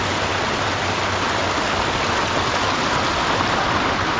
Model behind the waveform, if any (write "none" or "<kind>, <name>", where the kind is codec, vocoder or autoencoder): none